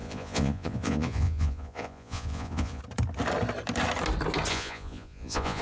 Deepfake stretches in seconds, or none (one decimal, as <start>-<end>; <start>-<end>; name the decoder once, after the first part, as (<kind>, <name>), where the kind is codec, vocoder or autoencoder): 0.0-2.8 (vocoder, Vocos); 4.5-5.6